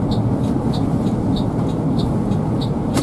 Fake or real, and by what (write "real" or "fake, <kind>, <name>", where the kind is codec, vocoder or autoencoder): real